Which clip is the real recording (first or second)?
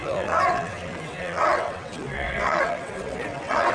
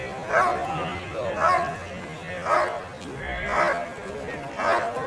second